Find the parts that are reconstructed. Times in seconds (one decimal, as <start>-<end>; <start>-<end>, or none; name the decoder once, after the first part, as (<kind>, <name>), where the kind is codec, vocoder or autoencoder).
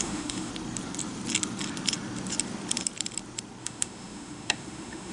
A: 0.0-0.5 (autoencoder, DAC-VAE); 3.6-5.1